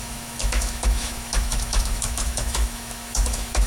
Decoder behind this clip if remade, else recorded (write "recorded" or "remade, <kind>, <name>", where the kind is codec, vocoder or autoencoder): remade, autoencoder, DAC-VAE